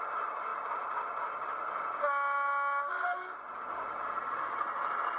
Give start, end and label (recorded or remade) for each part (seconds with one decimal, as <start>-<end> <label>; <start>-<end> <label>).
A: 0.0-5.2 recorded